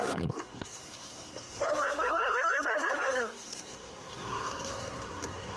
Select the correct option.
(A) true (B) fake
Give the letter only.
B